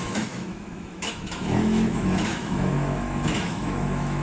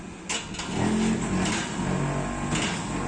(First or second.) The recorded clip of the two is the second